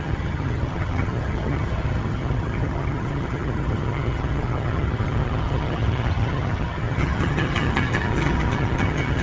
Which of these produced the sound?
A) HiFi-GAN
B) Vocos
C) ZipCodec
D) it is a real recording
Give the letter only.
A